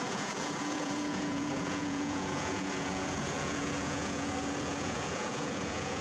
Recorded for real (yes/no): no